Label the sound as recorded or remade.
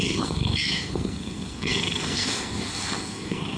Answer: remade